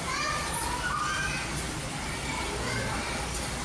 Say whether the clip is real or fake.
real